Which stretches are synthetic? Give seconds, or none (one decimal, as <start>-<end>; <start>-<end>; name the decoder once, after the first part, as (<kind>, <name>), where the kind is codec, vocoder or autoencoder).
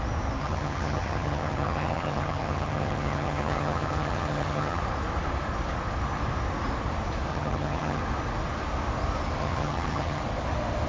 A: 0.4-4.8 (vocoder, HiFi-GAN); 7.3-8.0; 9.4-10.2